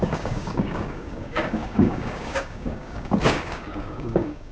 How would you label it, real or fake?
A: fake